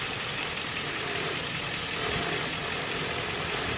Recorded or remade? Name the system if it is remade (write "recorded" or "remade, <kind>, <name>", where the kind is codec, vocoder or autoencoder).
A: remade, vocoder, BigVGAN v2